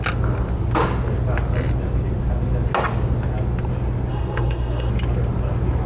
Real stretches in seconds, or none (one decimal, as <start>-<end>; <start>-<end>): 0.0-4.1; 4.9-5.9

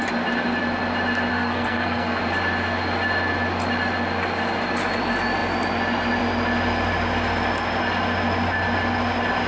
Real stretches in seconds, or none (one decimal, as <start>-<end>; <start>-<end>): 0.0-1.3; 2.2-9.5

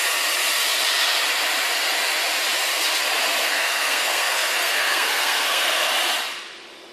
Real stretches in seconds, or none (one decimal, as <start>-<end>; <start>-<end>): 0.0-3.4; 5.9-6.9

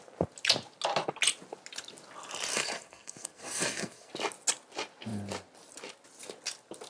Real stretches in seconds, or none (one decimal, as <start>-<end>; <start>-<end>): 0.0-2.5; 4.1-6.9